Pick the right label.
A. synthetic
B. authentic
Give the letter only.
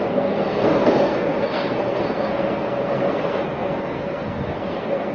A